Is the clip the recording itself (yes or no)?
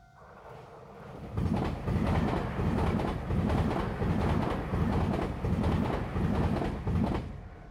yes